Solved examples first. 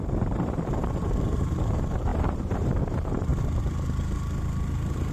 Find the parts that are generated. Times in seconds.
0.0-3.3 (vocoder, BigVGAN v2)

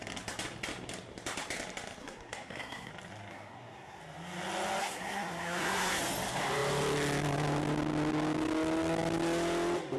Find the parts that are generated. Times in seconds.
2.0-2.9 (codec, SNAC); 3.3-4.0; 4.8-6.0

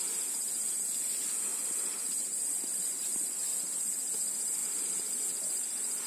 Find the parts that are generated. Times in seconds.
1.5-2.8 (vocoder, BigVGAN v2); 4.6-5.2

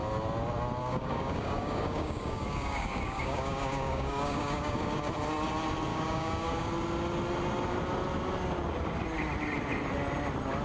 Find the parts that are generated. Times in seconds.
0.8-5.1 (codec, DAC); 5.9-6.7

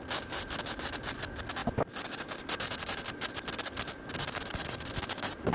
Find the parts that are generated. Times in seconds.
1.6-4.9 (vocoder, BigVGAN v2)